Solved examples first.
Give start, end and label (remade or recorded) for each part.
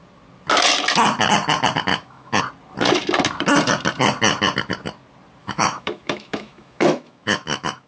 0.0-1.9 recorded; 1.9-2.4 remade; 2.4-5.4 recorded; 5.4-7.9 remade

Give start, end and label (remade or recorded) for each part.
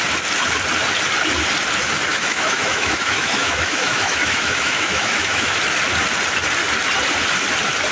0.0-2.1 recorded; 2.1-5.6 remade; 5.6-7.9 recorded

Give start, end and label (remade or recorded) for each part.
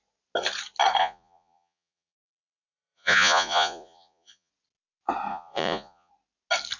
0.0-1.0 recorded; 1.0-4.5 remade; 4.5-5.3 recorded; 5.3-6.1 remade; 6.1-6.8 recorded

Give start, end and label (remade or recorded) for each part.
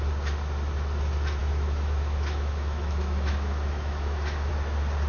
0.0-1.4 recorded; 1.4-4.5 remade; 4.5-5.1 recorded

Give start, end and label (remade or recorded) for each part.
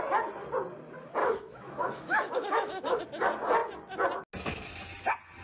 0.0-1.2 recorded; 1.2-3.0 remade; 3.0-5.4 recorded